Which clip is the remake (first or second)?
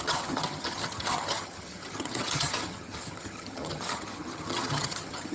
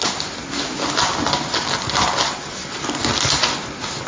first